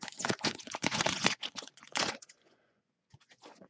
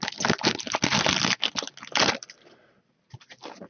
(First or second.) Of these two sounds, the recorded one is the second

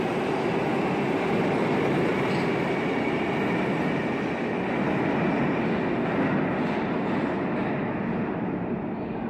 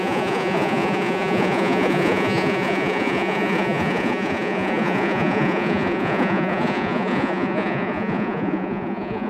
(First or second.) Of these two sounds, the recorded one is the first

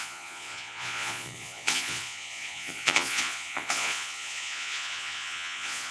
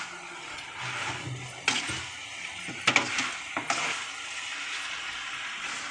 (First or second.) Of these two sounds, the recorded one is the second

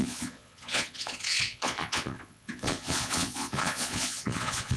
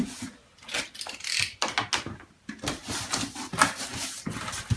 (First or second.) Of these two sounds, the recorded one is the second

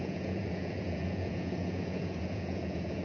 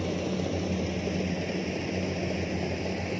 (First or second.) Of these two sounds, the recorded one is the second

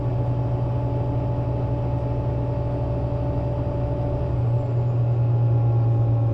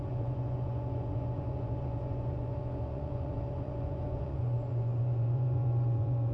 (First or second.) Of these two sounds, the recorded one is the first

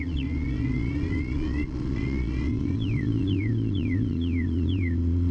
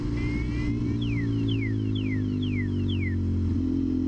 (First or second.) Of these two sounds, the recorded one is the second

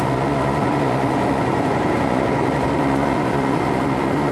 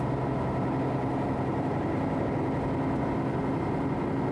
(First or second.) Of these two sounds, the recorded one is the second